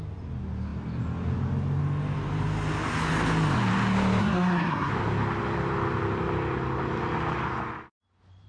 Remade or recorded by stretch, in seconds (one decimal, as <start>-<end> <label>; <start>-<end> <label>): 0.0-4.2 recorded; 4.2-4.9 remade; 4.9-8.5 recorded